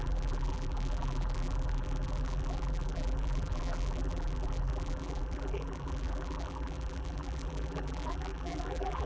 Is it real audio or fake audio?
fake